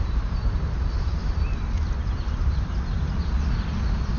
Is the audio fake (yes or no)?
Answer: no